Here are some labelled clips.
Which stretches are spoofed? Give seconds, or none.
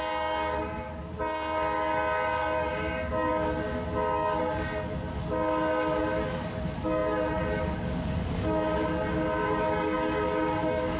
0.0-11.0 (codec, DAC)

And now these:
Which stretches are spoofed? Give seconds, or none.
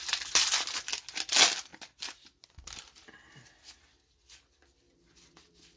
none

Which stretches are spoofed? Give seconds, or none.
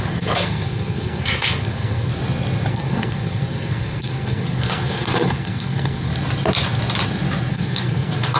0.0-2.1 (codec, SNAC); 2.7-6.1; 7.5-8.4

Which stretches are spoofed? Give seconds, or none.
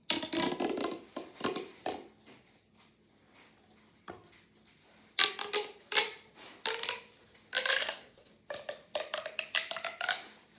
7.8-8.3 (codec, SNAC)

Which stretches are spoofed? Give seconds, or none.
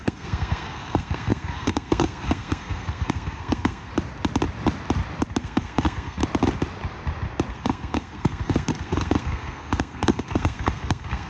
0.0-3.9 (codec, SNAC); 5.4-6.2; 7.5-11.3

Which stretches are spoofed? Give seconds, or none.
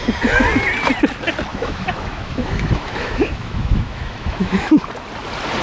1.5-4.9 (autoencoder, DAC-VAE)